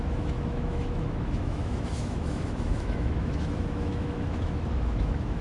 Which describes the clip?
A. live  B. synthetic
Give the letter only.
B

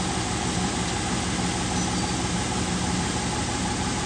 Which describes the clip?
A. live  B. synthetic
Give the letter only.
A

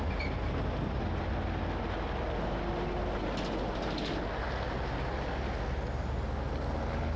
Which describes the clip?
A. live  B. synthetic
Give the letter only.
A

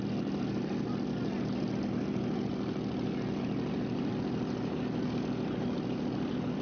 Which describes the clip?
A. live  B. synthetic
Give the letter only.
A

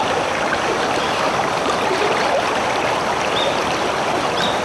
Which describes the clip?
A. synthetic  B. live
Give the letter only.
B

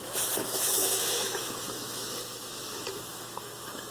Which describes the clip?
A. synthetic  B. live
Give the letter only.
A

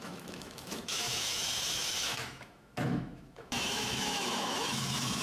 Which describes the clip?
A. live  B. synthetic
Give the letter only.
B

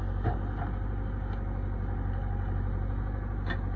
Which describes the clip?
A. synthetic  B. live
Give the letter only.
B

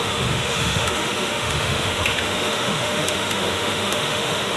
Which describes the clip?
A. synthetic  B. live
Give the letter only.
A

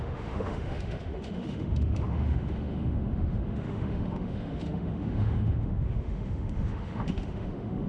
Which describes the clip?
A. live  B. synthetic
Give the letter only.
B